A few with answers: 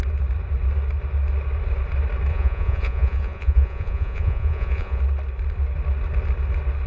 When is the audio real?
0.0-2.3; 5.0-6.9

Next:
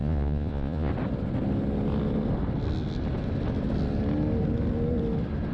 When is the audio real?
0.9-5.5

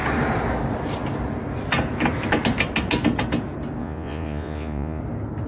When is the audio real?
0.0-3.8; 5.0-5.5

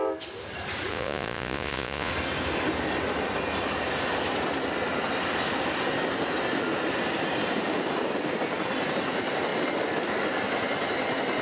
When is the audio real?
0.0-0.9; 2.1-11.4

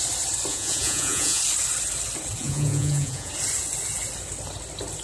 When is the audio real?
0.0-0.5; 1.4-2.4; 3.3-5.0